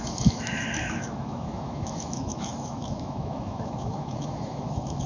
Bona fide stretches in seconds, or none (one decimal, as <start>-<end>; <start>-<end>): none